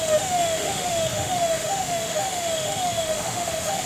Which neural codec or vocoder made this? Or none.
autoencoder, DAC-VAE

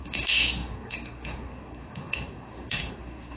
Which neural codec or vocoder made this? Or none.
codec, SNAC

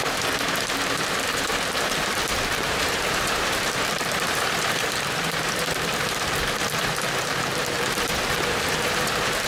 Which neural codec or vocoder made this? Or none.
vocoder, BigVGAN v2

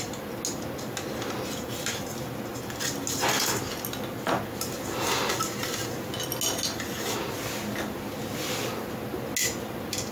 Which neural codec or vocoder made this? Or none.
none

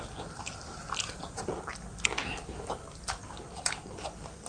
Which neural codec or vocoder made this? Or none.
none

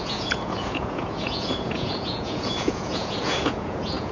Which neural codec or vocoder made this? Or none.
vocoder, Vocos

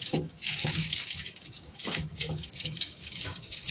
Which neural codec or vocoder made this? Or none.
codec, DAC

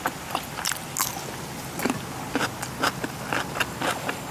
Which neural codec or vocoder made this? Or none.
none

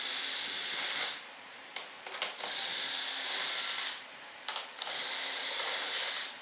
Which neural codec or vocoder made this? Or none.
vocoder, BigVGAN v2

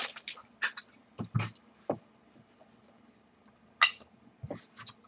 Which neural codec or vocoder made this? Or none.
none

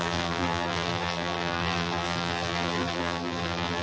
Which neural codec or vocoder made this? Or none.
vocoder, BigVGAN v2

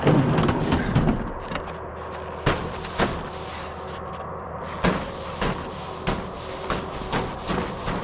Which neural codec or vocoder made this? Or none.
none